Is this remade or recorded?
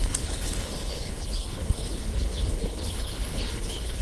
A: remade